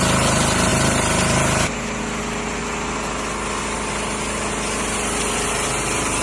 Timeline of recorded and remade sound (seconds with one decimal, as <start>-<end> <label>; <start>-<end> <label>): 0.0-6.2 recorded